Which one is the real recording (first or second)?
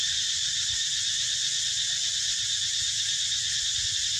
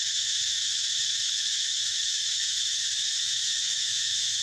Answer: first